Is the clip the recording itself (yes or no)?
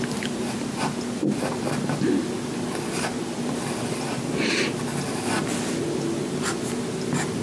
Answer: yes